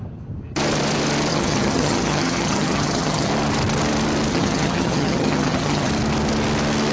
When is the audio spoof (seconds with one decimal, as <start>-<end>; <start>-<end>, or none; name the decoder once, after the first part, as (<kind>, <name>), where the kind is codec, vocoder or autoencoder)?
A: 1.3-3.3 (vocoder, HiFi-GAN); 4.3-5.9